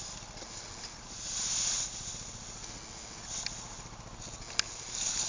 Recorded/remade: recorded